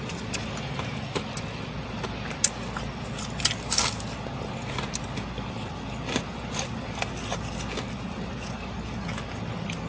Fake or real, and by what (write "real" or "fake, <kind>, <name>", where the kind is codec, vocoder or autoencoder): real